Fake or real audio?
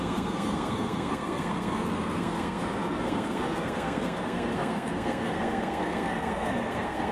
fake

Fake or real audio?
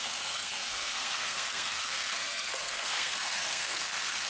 fake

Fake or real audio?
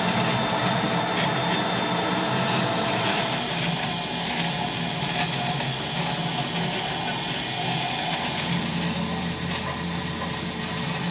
real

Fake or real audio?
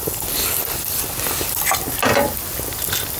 real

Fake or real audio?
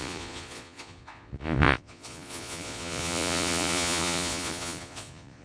fake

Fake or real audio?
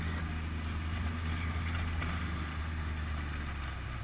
real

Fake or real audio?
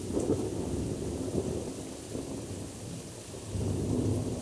real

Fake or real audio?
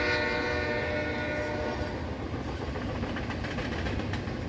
real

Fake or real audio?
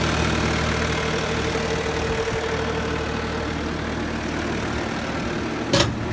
real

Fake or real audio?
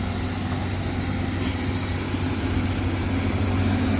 real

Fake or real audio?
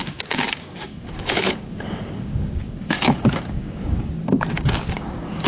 fake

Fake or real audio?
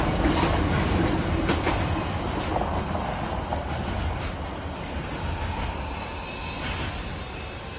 real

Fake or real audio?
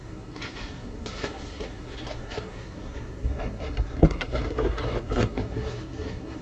fake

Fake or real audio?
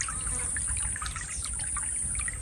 fake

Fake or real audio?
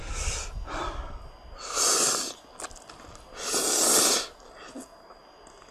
real